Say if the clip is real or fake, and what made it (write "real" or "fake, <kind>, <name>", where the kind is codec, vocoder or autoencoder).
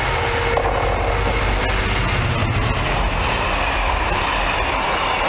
real